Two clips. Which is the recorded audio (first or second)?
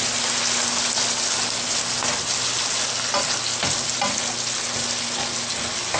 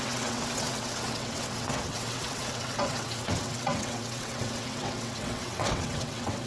first